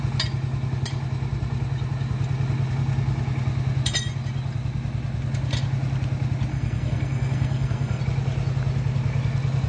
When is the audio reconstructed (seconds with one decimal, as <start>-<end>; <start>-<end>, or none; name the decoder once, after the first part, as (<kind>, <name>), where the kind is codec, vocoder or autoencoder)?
6.5-8.0 (codec, SNAC)